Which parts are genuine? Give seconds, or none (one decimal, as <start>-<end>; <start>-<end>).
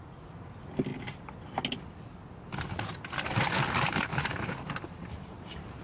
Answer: 0.0-4.1